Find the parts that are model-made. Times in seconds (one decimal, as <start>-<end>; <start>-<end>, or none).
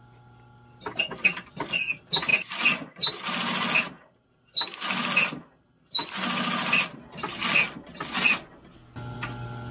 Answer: none